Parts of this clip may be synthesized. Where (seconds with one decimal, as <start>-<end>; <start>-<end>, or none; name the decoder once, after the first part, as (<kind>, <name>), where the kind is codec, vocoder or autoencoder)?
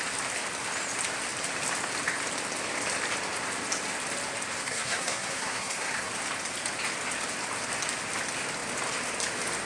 4.6-6.1 (codec, SNAC)